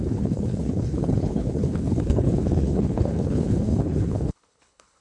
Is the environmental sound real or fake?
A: fake